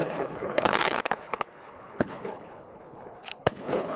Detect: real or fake fake